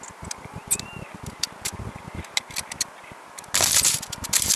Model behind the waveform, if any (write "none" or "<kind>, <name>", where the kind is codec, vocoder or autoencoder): none